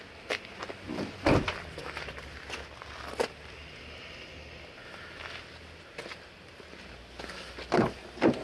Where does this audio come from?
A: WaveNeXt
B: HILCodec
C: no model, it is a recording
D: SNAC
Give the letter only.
C